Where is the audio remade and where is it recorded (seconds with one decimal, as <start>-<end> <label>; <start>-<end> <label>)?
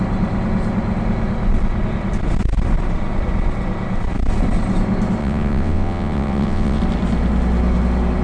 0.0-5.2 recorded; 5.2-6.8 remade; 6.8-8.2 recorded